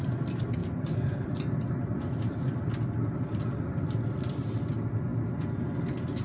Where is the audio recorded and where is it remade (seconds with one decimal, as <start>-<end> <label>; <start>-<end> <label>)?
0.0-0.6 recorded; 0.6-3.9 remade; 3.9-6.2 recorded